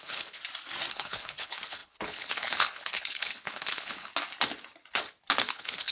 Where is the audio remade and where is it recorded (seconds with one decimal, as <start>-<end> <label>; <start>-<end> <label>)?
0.0-0.4 remade; 0.4-0.9 recorded; 0.9-4.1 remade; 4.1-5.4 recorded; 5.4-5.9 remade